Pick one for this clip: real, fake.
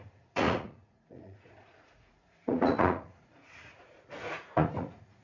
fake